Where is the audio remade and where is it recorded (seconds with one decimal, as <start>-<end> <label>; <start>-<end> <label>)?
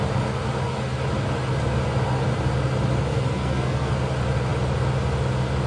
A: 0.0-3.1 recorded; 3.1-3.9 remade; 3.9-5.7 recorded